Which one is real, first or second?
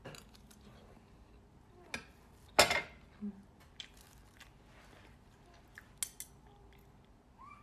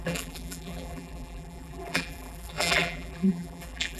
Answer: first